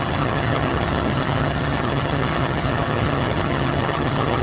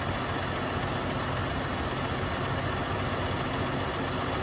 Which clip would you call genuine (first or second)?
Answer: second